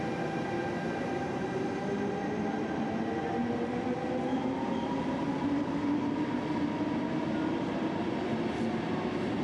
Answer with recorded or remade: recorded